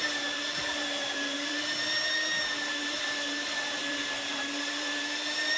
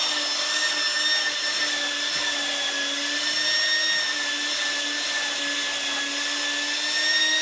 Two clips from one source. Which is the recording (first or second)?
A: second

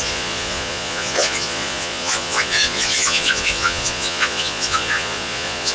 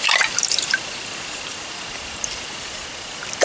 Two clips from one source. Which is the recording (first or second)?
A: second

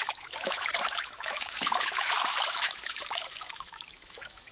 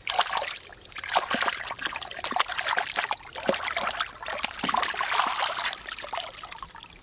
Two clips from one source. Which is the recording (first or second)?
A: second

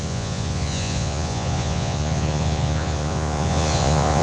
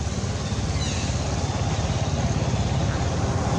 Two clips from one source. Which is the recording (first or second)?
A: second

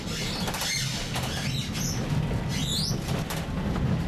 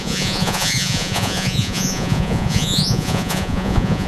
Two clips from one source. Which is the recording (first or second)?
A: first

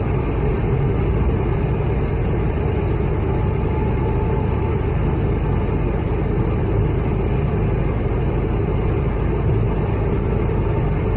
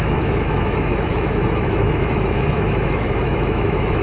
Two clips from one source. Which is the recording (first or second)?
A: first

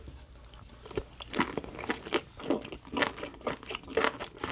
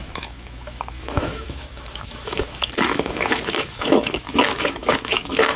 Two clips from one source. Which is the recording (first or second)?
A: first